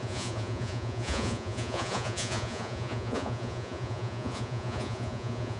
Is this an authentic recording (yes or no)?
no